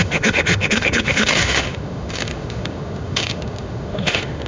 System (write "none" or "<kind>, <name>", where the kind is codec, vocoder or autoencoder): autoencoder, DAC-VAE